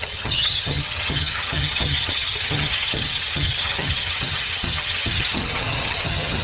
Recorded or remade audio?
remade